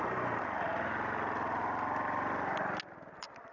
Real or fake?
real